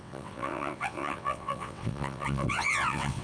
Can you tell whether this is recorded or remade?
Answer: remade